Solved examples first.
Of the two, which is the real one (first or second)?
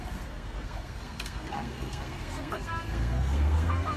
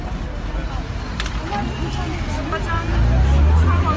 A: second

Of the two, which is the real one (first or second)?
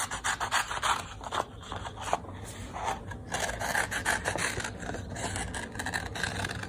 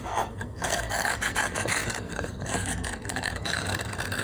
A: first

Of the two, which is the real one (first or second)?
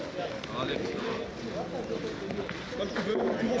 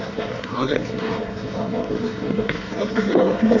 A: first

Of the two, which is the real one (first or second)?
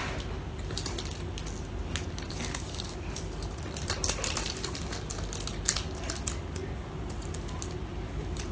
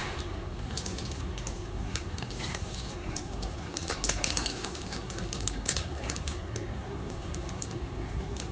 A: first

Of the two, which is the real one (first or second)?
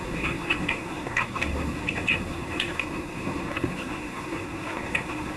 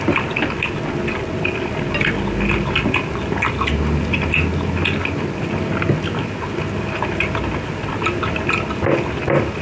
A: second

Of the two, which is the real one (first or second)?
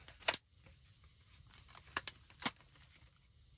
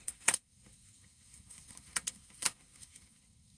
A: first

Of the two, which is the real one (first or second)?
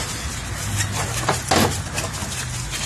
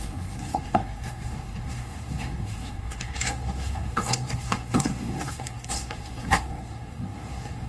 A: first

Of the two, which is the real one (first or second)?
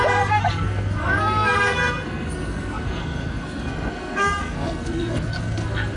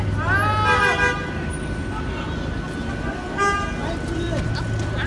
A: second